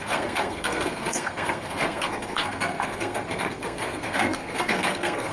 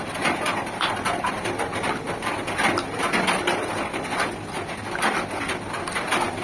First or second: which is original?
second